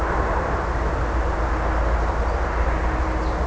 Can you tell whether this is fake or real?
real